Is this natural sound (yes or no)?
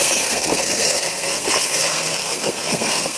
no